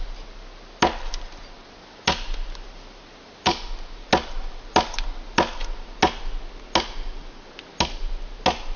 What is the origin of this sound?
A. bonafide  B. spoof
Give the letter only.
A